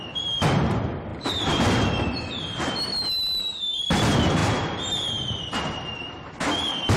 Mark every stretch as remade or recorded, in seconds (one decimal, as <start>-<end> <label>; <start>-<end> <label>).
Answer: 0.0-1.1 recorded; 1.1-1.6 remade; 1.6-4.4 recorded; 4.4-5.6 remade; 5.6-7.0 recorded